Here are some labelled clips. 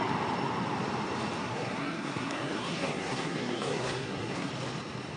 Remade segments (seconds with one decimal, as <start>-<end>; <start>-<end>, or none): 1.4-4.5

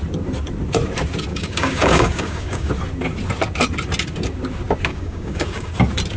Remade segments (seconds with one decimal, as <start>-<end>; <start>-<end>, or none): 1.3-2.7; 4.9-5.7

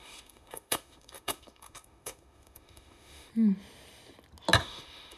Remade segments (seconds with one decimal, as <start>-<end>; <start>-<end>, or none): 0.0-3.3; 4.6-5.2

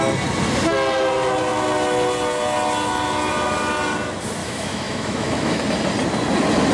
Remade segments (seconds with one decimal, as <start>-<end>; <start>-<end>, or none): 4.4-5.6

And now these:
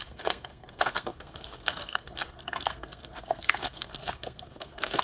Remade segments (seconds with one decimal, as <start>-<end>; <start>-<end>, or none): 0.0-5.0

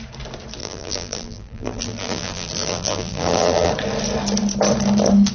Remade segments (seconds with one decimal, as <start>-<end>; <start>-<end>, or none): 0.6-3.7

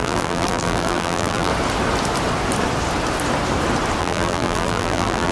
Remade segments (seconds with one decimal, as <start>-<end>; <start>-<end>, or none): 0.0-1.5; 4.0-5.3

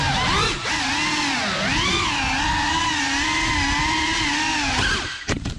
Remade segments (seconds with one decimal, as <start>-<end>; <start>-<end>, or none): none